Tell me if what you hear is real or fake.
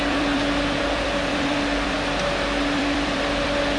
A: fake